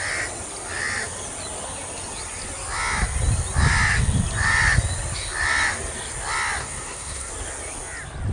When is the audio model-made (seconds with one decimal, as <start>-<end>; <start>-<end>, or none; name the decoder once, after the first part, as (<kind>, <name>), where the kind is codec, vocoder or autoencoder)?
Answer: 6.6-7.3 (codec, SNAC)